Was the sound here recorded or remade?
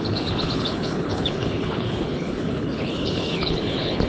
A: remade